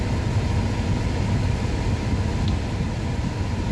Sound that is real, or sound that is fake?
real